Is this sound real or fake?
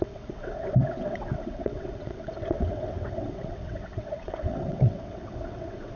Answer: fake